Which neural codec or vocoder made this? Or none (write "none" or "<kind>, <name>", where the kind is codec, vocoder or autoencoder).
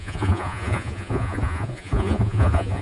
vocoder, Vocos